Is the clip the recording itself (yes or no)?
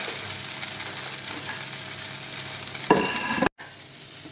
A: yes